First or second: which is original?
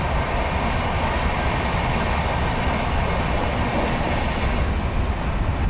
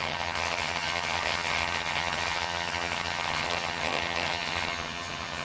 first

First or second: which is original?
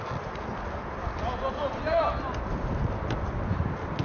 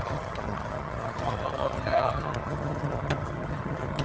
first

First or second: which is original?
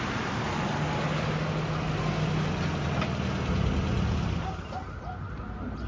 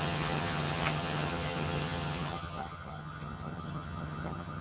first